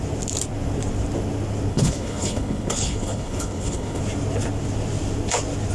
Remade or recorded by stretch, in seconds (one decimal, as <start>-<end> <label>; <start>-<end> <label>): 0.0-1.7 recorded; 1.7-4.0 remade; 4.0-5.7 recorded